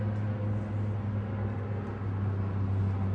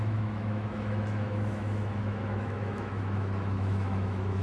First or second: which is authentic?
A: first